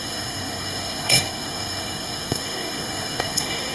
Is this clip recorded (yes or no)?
no